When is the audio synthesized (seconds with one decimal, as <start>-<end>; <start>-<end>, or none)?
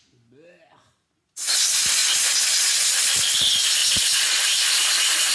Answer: 3.8-4.4